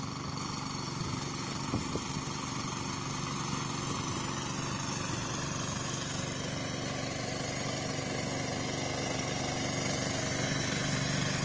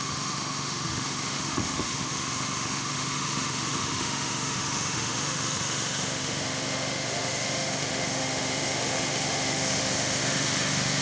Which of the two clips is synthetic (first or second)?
second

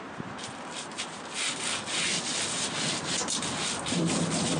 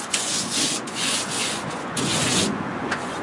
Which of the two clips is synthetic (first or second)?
second